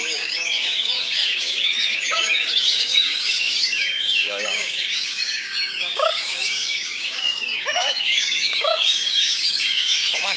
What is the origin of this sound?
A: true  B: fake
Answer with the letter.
B